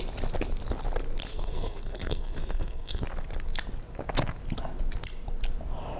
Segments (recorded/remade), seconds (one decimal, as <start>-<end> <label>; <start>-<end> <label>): 0.0-1.3 recorded; 1.3-3.0 remade; 3.0-6.0 recorded